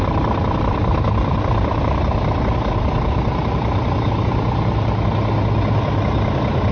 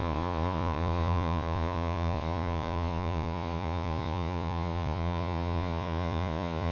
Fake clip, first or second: second